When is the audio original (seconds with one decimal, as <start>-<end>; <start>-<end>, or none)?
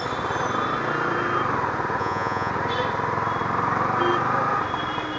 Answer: 0.0-2.0; 2.5-5.2